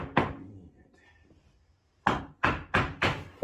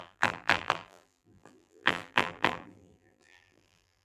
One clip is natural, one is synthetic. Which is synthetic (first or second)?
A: second